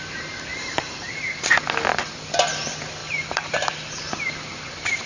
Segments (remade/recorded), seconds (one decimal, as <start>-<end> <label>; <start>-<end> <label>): 0.0-0.5 recorded; 0.5-1.1 remade; 1.1-3.0 recorded; 3.0-3.7 remade; 3.7-5.1 recorded

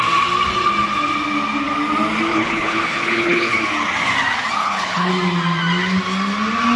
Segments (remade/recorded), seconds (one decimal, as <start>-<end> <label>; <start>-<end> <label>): 0.0-2.3 recorded; 2.3-3.5 remade; 3.5-4.6 recorded; 4.6-5.1 remade; 5.1-6.8 recorded

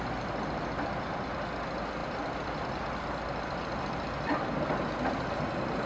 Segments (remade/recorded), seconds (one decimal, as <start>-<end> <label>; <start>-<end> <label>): 0.0-5.9 recorded

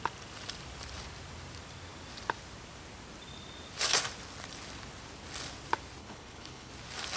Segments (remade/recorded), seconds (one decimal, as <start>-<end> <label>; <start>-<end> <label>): 0.0-6.0 recorded; 6.0-6.7 remade; 6.7-7.2 recorded

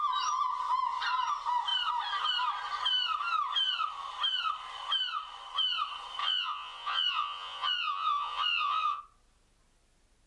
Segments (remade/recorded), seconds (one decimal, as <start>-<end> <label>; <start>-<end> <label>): 0.0-6.2 recorded; 6.2-9.0 remade; 9.0-10.3 recorded

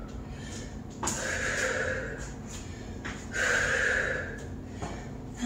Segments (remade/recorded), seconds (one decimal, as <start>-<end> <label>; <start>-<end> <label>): 0.0-5.5 recorded

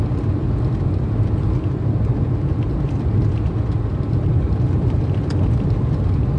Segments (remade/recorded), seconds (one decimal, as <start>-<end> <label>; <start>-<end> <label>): 0.0-3.9 recorded; 3.9-5.3 remade; 5.3-6.4 recorded